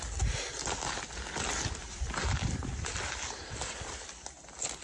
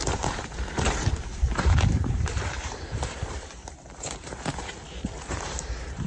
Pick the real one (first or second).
first